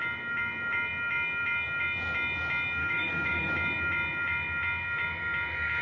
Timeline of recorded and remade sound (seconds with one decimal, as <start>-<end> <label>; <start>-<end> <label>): 0.0-2.8 recorded; 2.8-3.5 remade; 3.5-5.8 recorded